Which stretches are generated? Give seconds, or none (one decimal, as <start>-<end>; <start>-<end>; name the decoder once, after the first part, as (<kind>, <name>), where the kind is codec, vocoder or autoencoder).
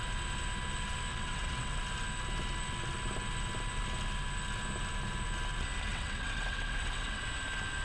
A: 1.1-1.8 (vocoder, WaveNeXt); 5.9-7.2